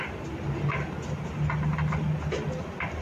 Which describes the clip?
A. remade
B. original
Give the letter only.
B